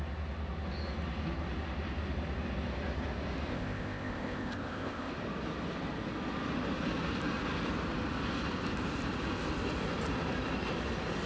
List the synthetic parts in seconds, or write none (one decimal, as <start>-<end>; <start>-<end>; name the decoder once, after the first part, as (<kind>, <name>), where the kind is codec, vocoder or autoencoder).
3.5-5.1 (codec, ZipCodec)